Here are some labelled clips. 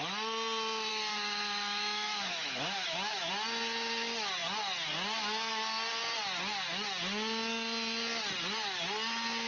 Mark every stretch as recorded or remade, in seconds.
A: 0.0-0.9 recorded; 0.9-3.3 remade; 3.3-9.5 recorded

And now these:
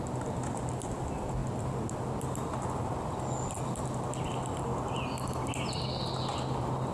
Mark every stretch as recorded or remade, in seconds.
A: 0.0-6.9 recorded

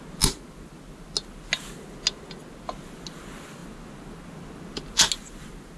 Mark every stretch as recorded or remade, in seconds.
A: 0.0-5.8 recorded

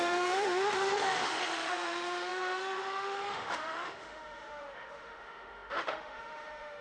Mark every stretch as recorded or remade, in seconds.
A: 0.0-6.8 remade

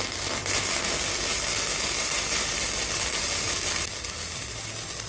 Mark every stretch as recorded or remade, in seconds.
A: 0.0-5.1 recorded